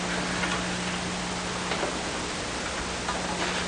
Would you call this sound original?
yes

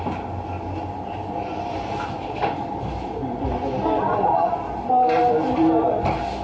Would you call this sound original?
yes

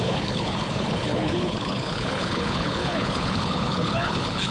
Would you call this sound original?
no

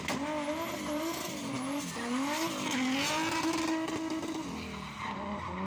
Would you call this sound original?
yes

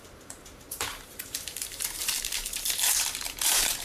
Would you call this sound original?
no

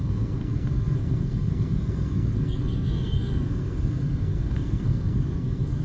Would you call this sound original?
no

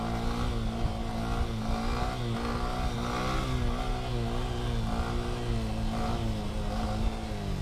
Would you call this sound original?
yes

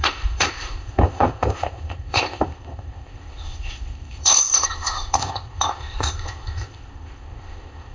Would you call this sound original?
no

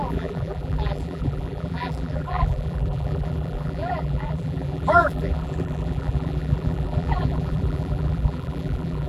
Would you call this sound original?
no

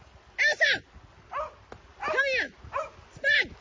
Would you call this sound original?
yes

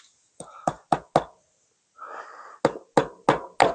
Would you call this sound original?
yes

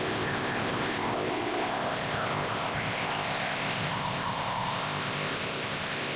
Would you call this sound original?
no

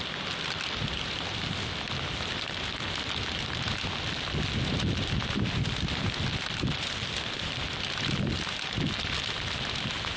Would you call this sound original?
yes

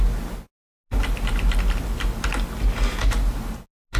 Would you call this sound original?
yes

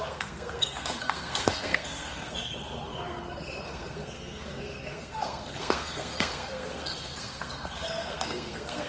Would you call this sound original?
no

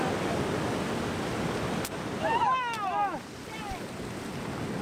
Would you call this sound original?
yes